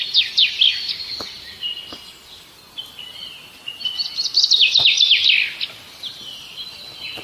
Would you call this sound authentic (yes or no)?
yes